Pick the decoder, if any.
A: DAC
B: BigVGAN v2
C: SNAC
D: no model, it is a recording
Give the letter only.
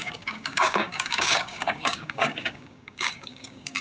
A